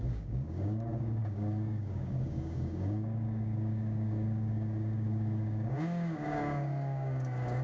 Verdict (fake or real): fake